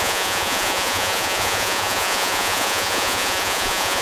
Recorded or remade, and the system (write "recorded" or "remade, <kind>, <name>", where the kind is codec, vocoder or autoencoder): remade, vocoder, Vocos